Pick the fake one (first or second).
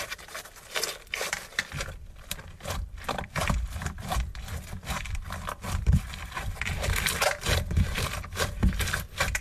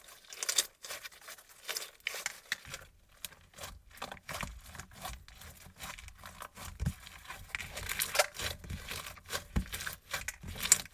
first